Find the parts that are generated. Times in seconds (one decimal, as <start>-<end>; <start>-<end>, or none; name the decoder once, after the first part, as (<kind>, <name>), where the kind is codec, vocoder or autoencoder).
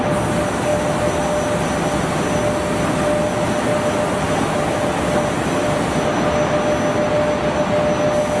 none